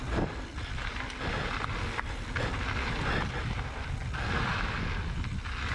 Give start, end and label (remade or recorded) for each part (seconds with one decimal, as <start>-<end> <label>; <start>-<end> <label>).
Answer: 0.0-5.7 recorded